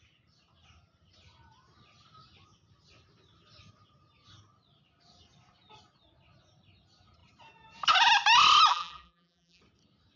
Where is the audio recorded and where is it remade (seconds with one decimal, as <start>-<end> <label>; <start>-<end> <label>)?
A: 0.0-8.7 recorded; 8.7-9.6 remade; 9.6-10.2 recorded